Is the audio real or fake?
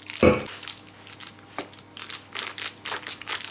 real